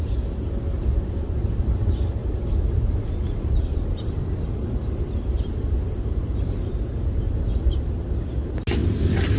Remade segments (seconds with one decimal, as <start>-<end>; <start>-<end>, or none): 2.2-6.7; 8.8-9.4